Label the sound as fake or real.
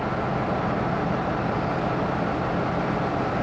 real